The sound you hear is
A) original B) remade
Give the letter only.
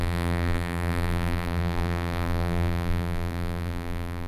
B